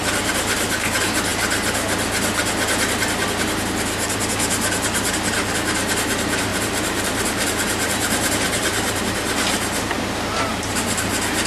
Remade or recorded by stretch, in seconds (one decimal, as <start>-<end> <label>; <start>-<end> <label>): 0.0-6.5 recorded; 6.5-9.0 remade; 9.0-10.5 recorded; 10.5-11.1 remade; 11.1-11.5 recorded